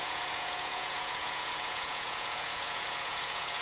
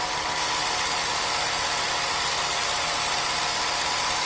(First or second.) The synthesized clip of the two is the first